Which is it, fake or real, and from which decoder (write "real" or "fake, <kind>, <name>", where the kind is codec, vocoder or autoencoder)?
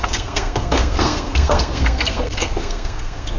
fake, codec, SNAC